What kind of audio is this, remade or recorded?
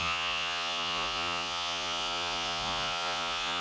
remade